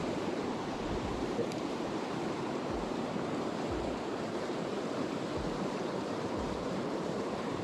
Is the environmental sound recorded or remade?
remade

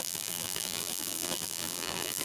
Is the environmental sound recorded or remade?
remade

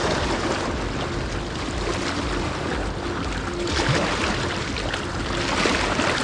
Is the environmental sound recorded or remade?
recorded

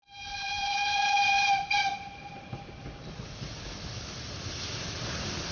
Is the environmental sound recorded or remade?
recorded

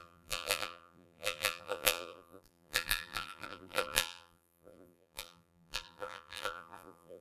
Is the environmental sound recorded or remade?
remade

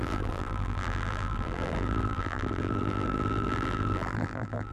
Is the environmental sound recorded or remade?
remade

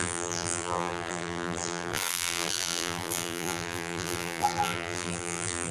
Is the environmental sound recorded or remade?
remade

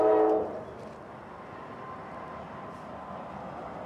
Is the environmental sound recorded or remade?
recorded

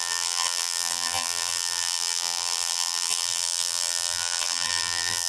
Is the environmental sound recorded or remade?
remade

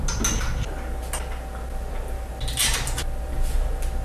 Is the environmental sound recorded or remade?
recorded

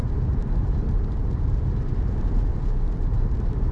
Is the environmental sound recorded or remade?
remade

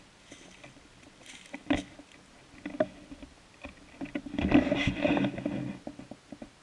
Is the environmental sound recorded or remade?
recorded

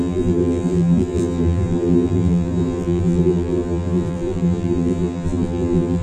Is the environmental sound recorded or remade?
remade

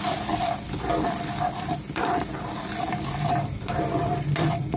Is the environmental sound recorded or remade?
remade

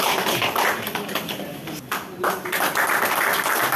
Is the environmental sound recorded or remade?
recorded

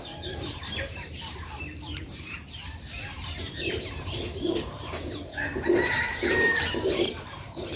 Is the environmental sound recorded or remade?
remade